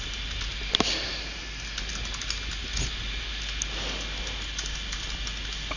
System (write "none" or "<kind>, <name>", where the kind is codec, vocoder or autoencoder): none